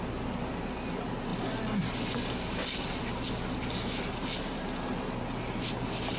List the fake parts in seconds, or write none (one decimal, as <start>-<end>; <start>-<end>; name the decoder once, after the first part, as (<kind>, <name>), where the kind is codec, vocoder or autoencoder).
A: none